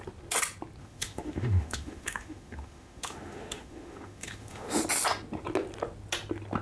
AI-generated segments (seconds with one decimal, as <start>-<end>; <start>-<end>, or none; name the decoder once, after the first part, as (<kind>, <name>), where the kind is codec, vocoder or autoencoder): 0.8-4.8 (autoencoder, DAC-VAE)